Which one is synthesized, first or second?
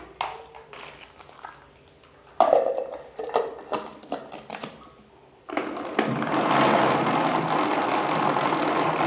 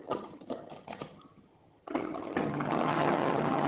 second